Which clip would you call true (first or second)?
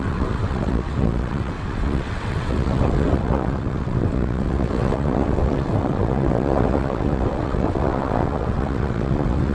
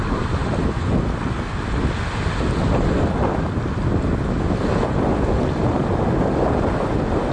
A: second